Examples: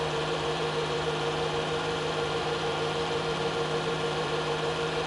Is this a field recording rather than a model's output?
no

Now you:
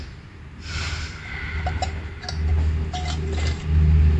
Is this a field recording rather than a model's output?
yes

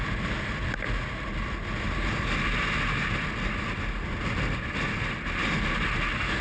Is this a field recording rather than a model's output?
yes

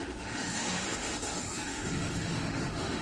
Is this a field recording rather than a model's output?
no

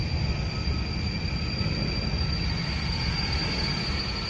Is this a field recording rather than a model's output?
yes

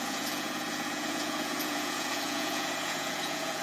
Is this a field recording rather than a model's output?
no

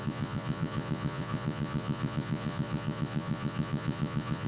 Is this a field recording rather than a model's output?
no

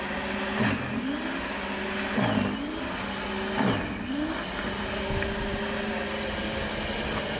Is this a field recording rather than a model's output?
yes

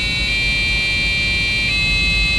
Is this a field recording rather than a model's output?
yes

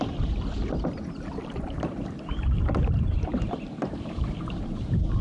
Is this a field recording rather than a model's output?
no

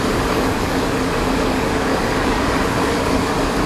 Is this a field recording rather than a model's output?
no